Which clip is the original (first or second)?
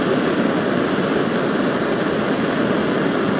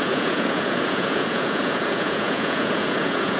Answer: first